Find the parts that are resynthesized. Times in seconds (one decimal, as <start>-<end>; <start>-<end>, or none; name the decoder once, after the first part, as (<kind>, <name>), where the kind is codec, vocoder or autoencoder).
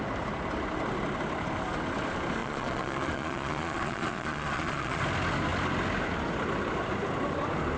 2.4-5.0 (vocoder, Vocos)